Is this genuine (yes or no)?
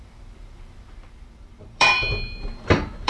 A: no